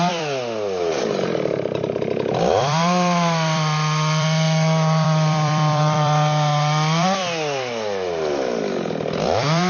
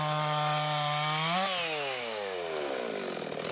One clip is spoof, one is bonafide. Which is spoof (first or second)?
first